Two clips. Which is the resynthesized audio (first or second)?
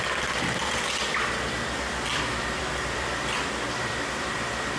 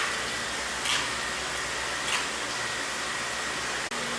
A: first